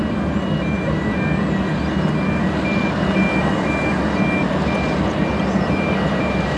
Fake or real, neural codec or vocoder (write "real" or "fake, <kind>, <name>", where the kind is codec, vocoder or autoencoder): real